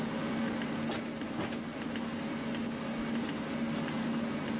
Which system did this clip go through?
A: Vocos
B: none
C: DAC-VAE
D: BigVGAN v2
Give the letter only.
B